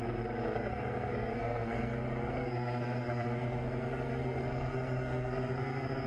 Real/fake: fake